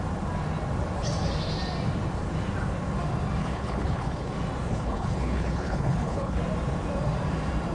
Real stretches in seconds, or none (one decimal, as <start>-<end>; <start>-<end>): 0.0-3.4; 4.3-4.7; 6.4-7.7

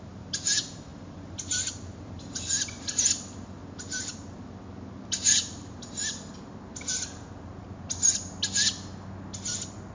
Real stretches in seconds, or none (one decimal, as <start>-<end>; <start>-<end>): 0.0-9.9

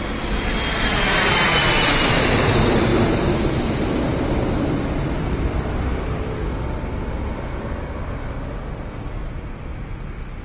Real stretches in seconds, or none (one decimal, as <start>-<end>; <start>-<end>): 0.0-2.9; 4.0-10.4

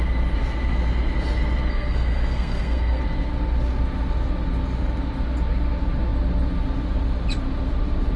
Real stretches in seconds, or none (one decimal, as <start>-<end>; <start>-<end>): 0.0-1.7; 3.0-8.2

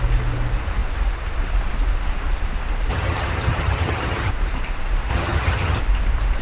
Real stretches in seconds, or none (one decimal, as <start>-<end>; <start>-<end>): 0.0-2.9; 4.3-5.1; 5.8-6.4

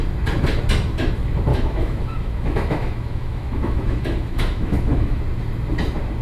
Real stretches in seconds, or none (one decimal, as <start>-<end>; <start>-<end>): 0.0-1.5; 5.2-6.2

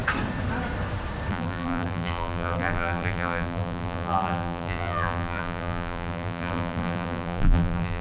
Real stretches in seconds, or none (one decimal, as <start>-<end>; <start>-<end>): 0.0-1.3